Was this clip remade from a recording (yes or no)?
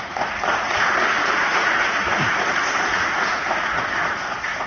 yes